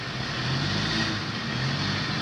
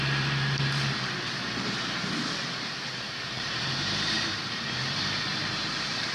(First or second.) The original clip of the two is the first